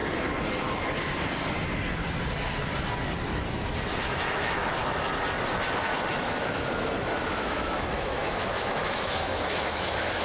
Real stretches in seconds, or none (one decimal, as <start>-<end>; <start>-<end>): 0.0-4.0; 4.8-6.1